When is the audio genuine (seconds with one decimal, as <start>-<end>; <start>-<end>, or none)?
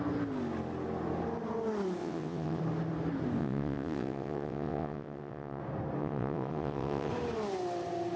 0.0-2.0; 2.6-3.4; 5.6-6.0; 7.1-8.2